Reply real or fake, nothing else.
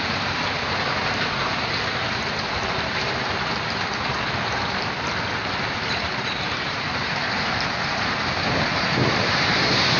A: fake